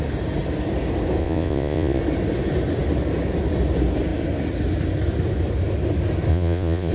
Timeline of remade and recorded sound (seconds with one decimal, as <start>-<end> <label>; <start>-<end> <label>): 0.0-1.2 recorded; 1.2-2.0 remade; 2.0-6.3 recorded; 6.3-6.9 remade